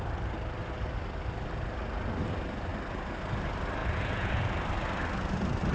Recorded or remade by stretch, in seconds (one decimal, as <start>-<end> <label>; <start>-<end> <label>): 0.0-3.8 recorded; 3.8-4.6 remade; 4.6-5.7 recorded